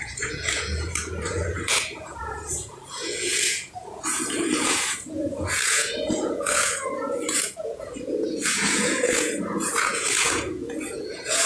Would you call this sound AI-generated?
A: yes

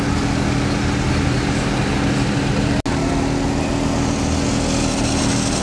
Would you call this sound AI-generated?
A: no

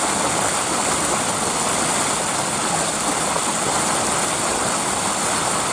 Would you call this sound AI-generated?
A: no